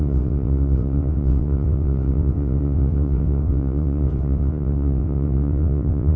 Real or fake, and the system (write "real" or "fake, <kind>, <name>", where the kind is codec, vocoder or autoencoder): fake, vocoder, WaveNeXt